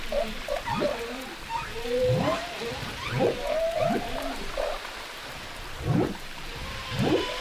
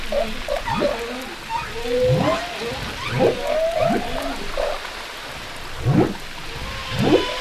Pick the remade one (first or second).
first